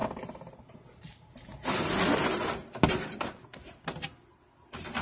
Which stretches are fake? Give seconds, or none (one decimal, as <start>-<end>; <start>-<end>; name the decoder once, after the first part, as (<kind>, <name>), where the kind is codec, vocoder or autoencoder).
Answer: 2.2-3.2 (vocoder, BigVGAN v2)